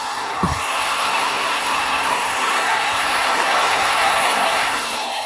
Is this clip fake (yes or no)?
yes